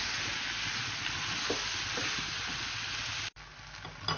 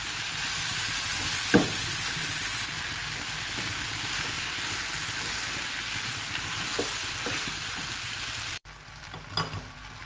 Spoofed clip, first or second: second